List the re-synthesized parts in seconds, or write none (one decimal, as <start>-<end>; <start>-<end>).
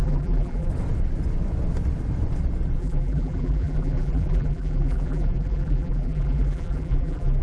0.0-0.7; 2.8-7.4